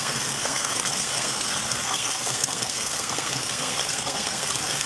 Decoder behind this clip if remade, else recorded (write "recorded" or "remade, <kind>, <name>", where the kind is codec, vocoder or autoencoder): remade, codec, SNAC